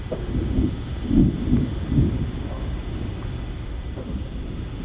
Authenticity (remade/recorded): recorded